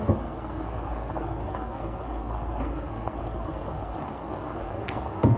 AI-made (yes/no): yes